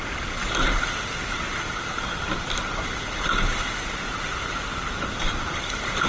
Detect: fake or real real